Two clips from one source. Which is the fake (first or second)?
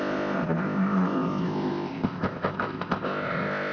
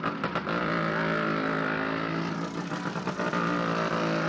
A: first